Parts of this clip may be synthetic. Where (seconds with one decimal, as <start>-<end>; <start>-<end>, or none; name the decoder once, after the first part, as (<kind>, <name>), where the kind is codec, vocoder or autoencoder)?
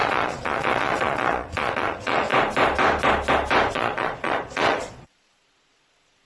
0.0-2.3 (vocoder, Vocos); 3.7-6.3